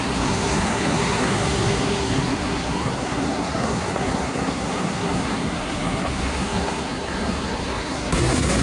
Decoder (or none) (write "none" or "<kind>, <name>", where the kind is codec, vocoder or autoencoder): codec, SNAC